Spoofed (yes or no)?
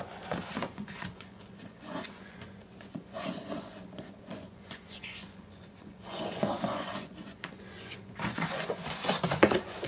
yes